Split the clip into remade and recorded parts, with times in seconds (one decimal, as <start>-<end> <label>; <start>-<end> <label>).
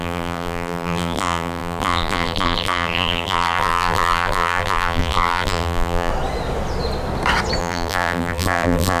0.0-6.1 remade; 6.1-7.6 recorded; 7.6-9.0 remade